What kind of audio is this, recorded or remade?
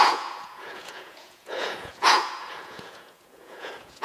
remade